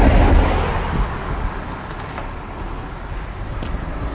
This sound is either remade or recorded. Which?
recorded